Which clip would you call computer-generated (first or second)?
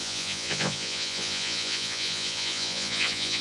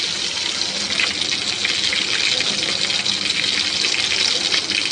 first